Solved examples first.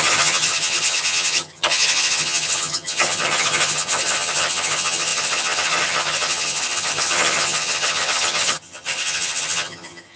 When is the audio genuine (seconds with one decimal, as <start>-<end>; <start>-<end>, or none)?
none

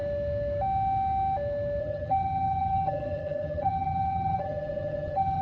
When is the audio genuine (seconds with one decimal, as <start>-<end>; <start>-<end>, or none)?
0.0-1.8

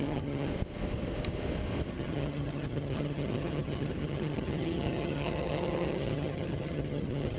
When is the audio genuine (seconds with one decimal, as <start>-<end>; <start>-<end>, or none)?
0.5-1.9

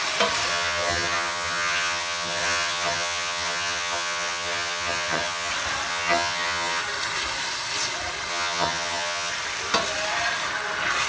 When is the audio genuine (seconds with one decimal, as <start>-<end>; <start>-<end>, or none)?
0.0-0.5; 5.5-5.9; 6.8-8.3; 9.3-11.1

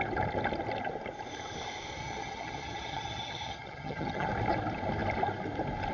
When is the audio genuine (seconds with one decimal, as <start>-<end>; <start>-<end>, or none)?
0.0-2.0; 4.3-5.9